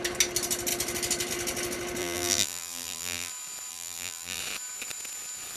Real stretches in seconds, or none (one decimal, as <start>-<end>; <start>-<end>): 0.0-2.0; 3.3-3.7; 4.4-5.6